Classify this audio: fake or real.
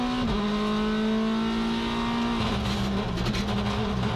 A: real